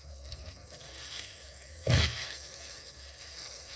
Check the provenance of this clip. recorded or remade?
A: remade